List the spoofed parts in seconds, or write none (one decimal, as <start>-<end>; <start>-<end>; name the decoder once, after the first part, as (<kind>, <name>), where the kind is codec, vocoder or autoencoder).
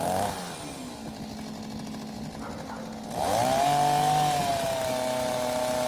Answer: none